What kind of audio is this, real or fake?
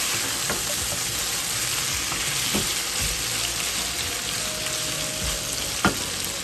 real